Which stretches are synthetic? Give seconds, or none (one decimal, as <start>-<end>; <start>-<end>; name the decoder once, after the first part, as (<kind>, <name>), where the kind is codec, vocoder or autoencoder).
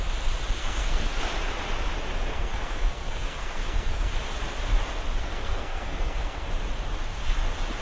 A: 0.6-1.1 (codec, SNAC); 2.3-4.1; 5.2-6.5